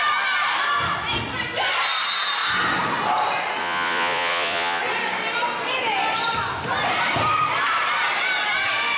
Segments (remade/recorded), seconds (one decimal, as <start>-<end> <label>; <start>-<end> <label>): 0.0-3.6 recorded; 3.6-4.8 remade; 4.8-9.0 recorded